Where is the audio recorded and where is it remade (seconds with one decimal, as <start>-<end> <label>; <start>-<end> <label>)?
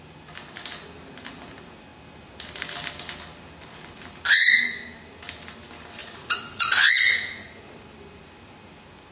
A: 0.0-6.0 recorded; 6.0-7.7 remade; 7.7-9.1 recorded